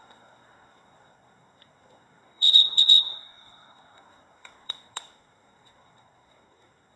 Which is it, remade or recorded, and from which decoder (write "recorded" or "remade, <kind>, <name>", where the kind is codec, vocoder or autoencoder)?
remade, codec, SNAC